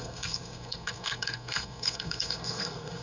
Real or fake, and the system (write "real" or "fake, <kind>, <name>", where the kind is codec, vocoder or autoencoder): fake, codec, SNAC